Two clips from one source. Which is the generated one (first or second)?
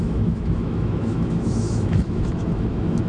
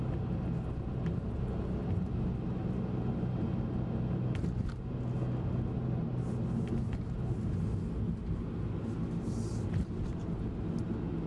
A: first